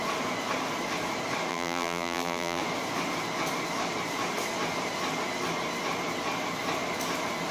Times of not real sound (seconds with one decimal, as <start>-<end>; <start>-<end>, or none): 1.5-2.6